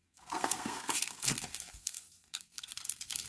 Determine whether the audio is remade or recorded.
remade